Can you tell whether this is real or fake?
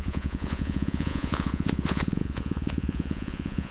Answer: fake